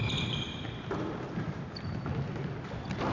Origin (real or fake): real